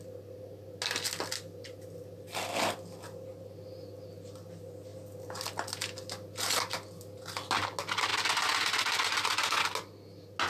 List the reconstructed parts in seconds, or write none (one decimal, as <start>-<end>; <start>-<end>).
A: none